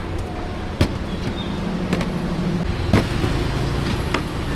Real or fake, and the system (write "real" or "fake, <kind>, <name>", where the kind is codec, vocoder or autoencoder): real